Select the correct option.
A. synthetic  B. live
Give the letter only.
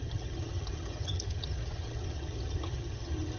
A